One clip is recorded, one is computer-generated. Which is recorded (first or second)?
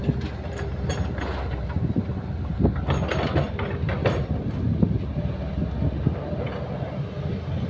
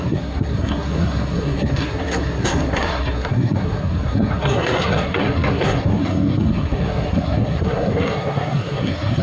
first